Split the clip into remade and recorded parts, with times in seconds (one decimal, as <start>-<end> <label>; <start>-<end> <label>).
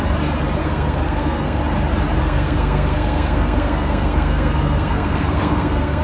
0.0-0.6 recorded; 0.6-1.6 remade; 1.6-2.2 recorded; 2.2-6.0 remade